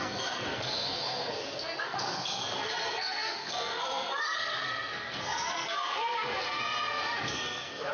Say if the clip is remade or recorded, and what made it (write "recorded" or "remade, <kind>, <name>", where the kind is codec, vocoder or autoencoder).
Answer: remade, codec, SNAC